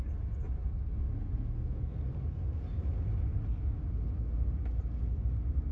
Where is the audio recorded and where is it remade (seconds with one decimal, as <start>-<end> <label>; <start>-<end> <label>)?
0.0-5.7 recorded